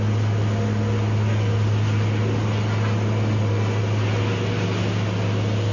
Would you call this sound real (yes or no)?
yes